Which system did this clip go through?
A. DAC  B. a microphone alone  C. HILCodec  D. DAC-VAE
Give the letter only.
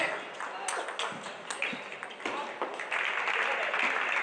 B